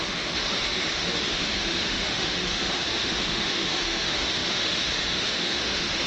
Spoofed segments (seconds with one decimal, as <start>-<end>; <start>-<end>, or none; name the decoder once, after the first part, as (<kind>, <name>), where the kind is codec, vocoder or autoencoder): 0.0-6.1 (autoencoder, DAC-VAE)